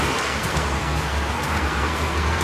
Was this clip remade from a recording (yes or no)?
yes